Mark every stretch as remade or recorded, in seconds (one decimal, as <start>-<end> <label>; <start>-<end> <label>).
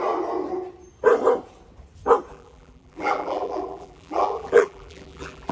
0.0-2.3 recorded; 2.3-5.5 remade